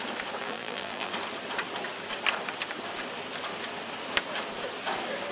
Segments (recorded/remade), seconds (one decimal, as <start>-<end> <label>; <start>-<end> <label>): 0.0-0.4 recorded; 0.4-1.1 remade; 1.1-5.3 recorded